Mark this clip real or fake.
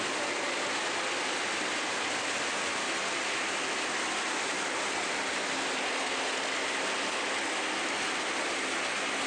real